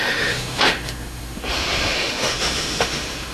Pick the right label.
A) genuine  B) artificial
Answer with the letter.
B